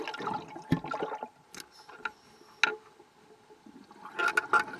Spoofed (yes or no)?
no